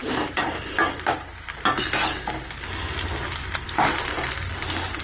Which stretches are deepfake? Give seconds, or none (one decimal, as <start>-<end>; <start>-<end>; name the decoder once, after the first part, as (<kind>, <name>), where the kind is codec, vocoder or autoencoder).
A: 0.0-0.6 (vocoder, BigVGAN v2); 3.9-4.5